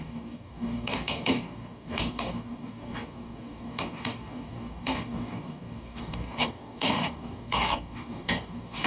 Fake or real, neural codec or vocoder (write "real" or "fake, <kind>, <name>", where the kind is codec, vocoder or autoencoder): fake, codec, DAC